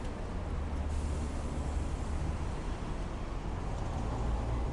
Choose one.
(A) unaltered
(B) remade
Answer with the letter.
A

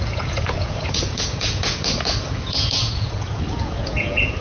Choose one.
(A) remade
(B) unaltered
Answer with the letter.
A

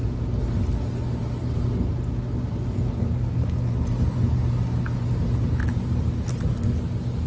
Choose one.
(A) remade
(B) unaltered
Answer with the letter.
B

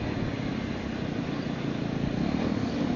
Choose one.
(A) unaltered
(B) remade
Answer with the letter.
A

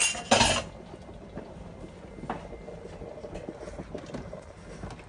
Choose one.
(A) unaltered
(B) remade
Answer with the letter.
A